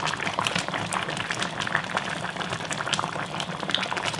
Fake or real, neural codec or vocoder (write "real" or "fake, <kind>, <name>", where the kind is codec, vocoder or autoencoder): fake, vocoder, BigVGAN v2